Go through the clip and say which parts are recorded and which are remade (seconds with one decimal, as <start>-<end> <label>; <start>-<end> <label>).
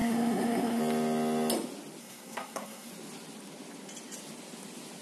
0.0-0.8 remade; 0.8-2.0 recorded; 2.0-2.9 remade; 2.9-5.0 recorded